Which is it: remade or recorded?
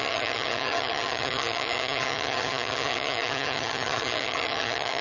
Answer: remade